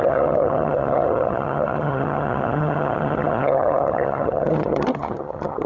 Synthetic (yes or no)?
yes